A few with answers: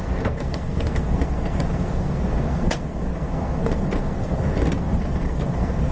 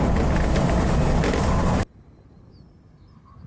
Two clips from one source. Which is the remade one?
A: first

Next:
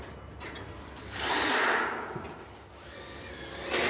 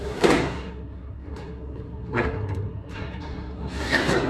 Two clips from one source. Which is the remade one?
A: second